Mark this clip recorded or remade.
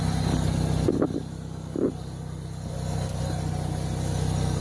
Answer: recorded